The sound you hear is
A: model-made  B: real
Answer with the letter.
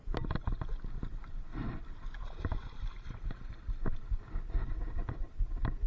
B